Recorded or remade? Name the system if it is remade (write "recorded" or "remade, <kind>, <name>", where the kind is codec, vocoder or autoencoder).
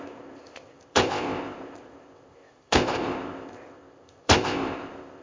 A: remade, codec, ZipCodec